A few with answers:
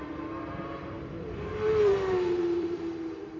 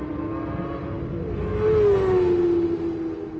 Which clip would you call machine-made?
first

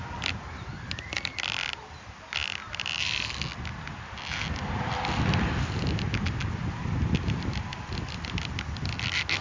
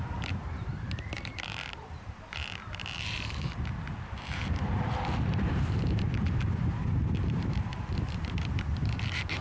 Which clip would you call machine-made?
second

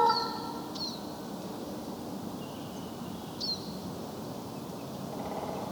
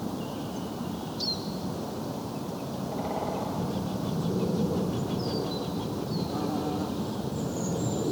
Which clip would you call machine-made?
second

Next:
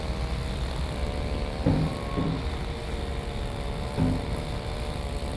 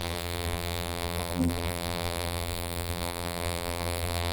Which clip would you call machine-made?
second